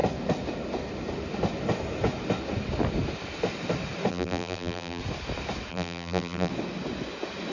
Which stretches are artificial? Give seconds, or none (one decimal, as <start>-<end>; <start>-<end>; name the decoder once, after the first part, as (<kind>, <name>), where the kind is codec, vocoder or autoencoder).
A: 4.1-5.0 (vocoder, BigVGAN v2); 5.7-6.5